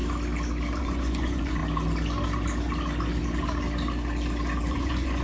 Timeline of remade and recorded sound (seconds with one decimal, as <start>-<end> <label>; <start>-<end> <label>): 0.0-0.8 recorded; 0.8-1.6 remade; 1.6-4.7 recorded; 4.7-5.2 remade